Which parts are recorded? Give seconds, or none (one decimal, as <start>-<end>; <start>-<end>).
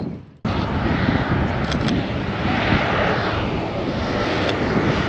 0.0-3.8; 4.5-5.1